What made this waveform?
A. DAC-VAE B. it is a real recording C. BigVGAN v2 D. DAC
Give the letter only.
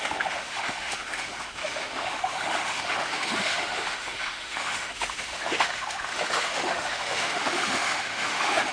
A